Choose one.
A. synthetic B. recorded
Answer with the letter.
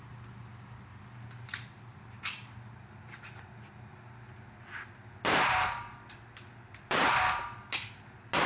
B